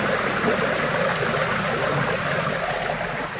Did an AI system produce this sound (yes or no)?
no